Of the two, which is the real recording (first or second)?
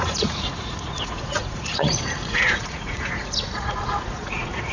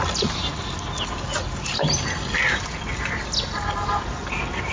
second